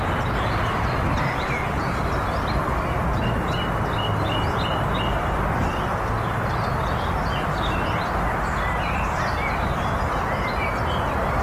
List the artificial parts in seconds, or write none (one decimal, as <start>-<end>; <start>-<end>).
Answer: none